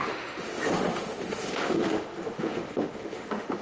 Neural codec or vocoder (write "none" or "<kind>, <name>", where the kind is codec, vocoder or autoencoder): autoencoder, DAC-VAE